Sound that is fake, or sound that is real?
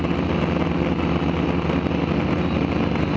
real